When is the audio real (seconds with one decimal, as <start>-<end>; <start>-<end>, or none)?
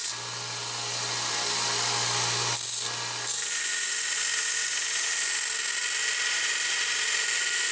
0.0-7.7